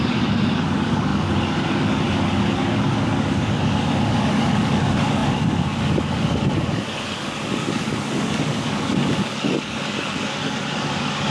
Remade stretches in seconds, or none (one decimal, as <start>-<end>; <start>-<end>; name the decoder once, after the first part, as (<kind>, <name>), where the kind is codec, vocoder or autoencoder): 0.0-11.3 (codec, DAC)